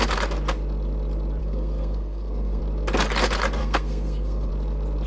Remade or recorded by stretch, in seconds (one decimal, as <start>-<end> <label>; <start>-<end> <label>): 0.0-1.4 recorded; 1.4-2.6 remade; 2.6-3.6 recorded; 3.6-4.5 remade; 4.5-5.1 recorded